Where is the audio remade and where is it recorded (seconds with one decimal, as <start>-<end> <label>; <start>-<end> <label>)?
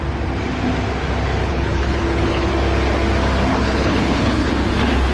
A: 0.0-1.4 recorded; 1.4-2.5 remade; 2.5-3.5 recorded; 3.5-4.5 remade; 4.5-5.1 recorded